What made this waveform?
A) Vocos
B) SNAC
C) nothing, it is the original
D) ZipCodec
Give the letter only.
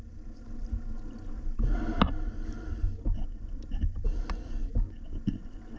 C